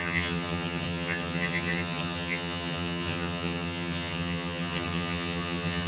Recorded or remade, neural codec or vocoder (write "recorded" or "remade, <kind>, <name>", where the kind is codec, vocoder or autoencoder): remade, vocoder, HiFi-GAN